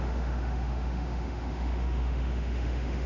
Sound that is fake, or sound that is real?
fake